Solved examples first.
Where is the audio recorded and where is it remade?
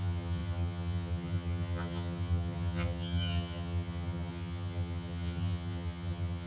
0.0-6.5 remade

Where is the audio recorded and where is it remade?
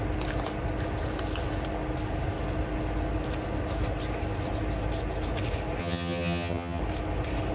0.0-5.8 recorded; 5.8-6.8 remade; 6.8-7.5 recorded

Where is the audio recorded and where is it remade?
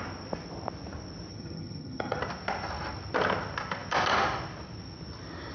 0.0-1.3 recorded; 1.3-2.2 remade; 2.2-5.5 recorded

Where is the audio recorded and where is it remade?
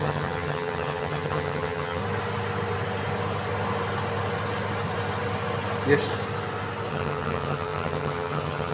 0.0-2.0 remade; 2.0-6.9 recorded; 6.9-8.7 remade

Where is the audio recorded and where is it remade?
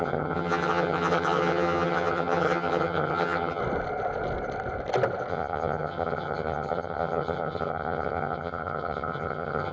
0.0-3.6 remade; 3.6-5.3 recorded; 5.3-9.7 remade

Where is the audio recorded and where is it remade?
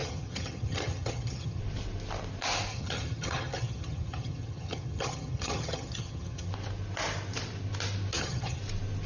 0.0-1.6 remade; 1.6-2.7 recorded; 2.7-6.5 remade; 6.5-8.1 recorded; 8.1-8.6 remade; 8.6-9.1 recorded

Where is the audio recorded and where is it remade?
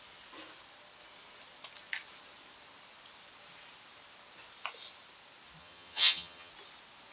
0.0-5.6 recorded; 5.6-6.5 remade; 6.5-7.1 recorded